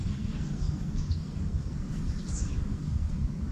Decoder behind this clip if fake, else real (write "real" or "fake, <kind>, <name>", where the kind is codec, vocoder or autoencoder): fake, codec, SNAC